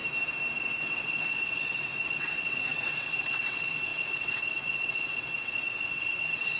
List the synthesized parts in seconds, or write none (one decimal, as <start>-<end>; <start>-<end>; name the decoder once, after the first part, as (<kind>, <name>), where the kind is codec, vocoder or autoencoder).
0.6-6.6 (vocoder, WaveNeXt)

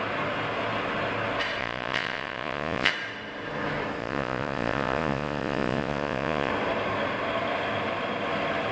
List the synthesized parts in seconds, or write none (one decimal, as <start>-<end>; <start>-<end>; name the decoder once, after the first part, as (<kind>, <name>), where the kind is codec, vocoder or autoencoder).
1.6-2.9 (vocoder, Vocos); 4.0-6.5

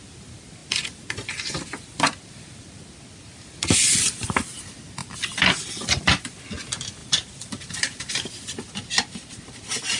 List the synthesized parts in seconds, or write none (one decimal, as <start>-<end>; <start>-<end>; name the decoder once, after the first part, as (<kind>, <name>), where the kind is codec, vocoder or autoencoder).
5.0-6.4 (vocoder, BigVGAN v2); 7.0-8.1

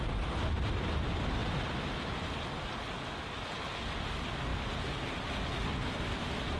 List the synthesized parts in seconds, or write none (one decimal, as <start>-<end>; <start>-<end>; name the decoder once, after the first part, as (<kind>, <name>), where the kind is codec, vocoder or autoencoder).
none

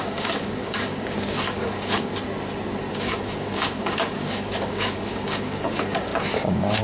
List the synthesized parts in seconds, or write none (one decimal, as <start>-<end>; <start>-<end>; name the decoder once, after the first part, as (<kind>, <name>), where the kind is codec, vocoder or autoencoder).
0.0-2.1 (codec, DAC); 2.9-6.8

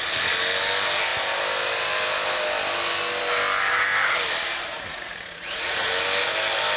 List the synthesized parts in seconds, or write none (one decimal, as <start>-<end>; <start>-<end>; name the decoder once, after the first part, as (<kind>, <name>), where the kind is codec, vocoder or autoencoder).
4.7-5.9 (vocoder, Vocos)

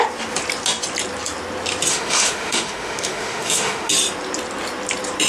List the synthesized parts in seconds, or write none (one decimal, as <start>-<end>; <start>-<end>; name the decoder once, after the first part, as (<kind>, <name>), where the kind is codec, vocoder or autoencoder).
1.9-3.9 (autoencoder, DAC-VAE)

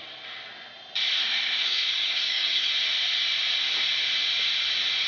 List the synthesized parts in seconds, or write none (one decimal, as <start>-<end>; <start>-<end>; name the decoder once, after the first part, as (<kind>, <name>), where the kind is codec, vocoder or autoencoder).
1.2-2.7 (codec, SNAC)